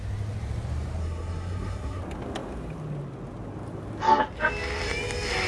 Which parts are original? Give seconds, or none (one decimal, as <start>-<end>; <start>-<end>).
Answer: 0.0-1.0; 2.0-5.5